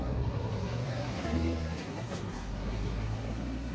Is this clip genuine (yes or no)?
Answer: no